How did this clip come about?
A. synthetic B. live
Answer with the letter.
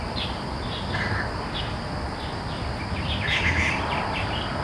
B